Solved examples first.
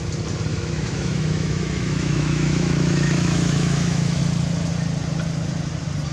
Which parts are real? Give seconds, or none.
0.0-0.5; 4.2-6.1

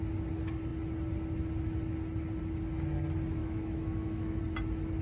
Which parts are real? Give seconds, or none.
0.0-3.4; 4.4-5.0

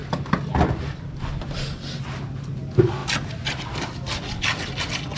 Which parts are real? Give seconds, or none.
0.0-5.2

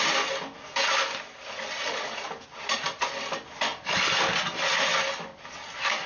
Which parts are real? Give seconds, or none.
0.0-6.1